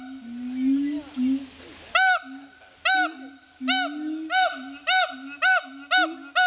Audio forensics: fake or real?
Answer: real